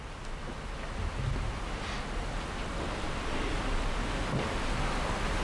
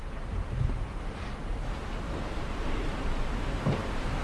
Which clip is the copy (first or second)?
second